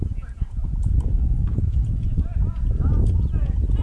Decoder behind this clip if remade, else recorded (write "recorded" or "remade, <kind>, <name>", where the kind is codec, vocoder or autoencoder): remade, vocoder, Vocos